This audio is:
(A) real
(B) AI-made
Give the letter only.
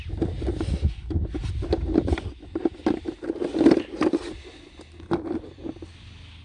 A